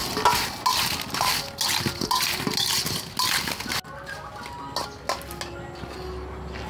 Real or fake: real